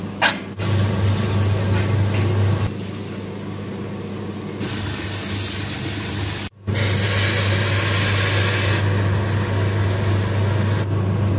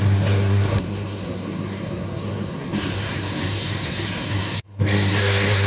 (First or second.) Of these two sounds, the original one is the first